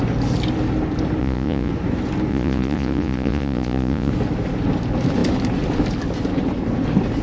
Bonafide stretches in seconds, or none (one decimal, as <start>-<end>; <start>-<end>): 0.0-1.2; 1.7-2.3; 4.1-7.2